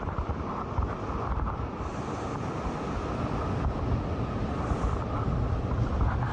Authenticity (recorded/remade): recorded